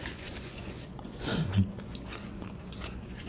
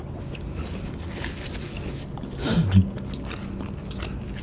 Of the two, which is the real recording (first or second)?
second